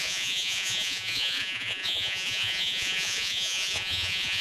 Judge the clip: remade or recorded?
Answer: remade